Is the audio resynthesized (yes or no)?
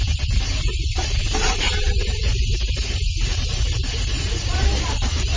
yes